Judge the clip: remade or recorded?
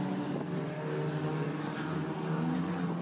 recorded